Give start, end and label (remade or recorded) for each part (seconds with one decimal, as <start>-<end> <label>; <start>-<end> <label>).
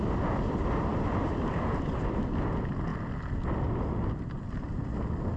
0.0-0.9 recorded; 0.9-2.0 remade; 2.0-5.4 recorded